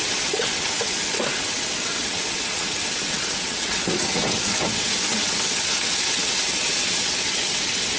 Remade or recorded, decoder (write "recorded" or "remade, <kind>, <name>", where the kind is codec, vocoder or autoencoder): remade, vocoder, WaveNeXt